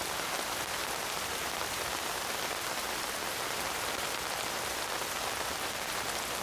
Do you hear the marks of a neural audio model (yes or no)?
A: yes